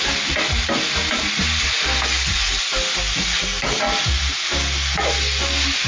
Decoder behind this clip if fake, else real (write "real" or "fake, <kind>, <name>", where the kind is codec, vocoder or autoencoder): real